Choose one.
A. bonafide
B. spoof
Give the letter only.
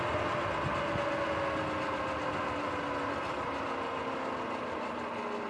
A